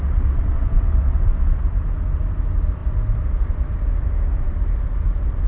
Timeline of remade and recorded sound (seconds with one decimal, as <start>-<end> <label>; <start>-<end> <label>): 0.0-1.6 remade; 1.6-5.5 recorded